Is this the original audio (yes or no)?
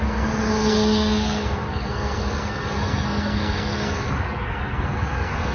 no